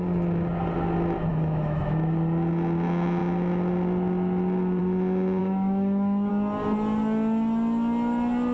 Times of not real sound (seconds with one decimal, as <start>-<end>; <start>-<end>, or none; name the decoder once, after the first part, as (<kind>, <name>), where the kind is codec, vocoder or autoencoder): 1.3-1.9 (autoencoder, DAC-VAE); 5.4-6.3